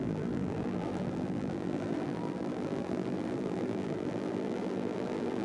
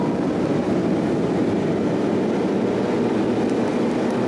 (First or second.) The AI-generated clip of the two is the first